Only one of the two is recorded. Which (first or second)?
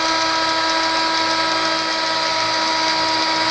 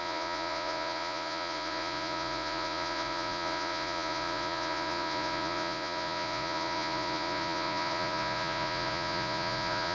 first